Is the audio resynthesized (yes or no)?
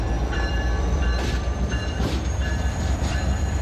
yes